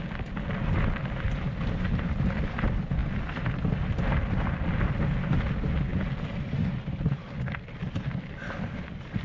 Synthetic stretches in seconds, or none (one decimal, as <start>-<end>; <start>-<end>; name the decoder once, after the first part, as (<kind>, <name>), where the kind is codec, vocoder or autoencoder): none